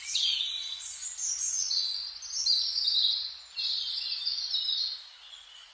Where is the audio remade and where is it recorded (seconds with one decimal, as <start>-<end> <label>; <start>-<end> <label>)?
0.0-2.0 remade; 2.0-5.0 recorded; 5.0-5.7 remade